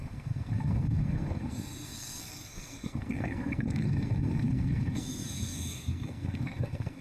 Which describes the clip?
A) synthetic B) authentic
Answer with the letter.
A